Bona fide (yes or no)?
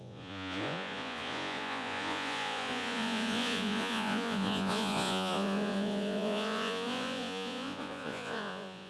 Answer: no